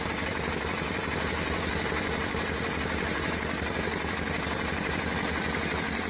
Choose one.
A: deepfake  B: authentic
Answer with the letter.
B